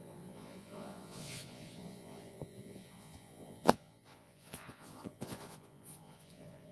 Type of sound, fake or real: fake